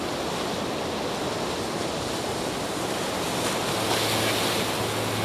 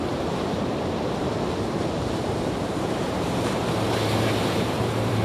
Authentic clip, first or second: first